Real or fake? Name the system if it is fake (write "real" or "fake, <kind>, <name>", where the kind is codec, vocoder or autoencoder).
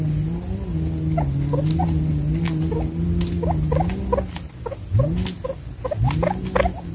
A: real